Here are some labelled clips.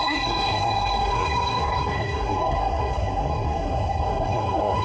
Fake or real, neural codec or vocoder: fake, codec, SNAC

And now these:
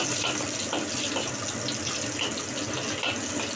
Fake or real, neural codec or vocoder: real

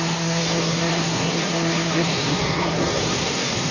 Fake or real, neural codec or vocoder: fake, codec, SNAC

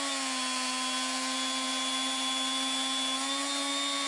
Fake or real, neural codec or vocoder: real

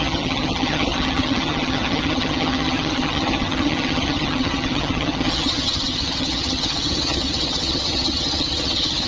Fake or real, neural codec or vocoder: fake, vocoder, HiFi-GAN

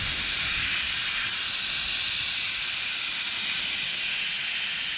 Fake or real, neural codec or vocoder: real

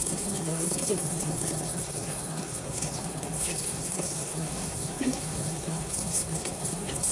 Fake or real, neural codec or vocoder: fake, codec, SNAC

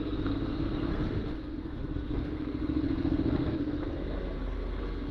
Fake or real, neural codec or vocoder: fake, codec, SNAC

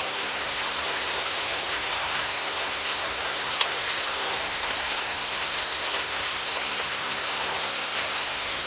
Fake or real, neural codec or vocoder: fake, codec, SNAC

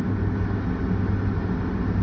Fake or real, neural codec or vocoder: real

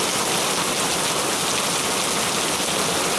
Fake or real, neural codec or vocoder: real